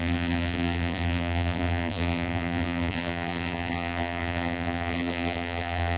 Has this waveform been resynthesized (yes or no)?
yes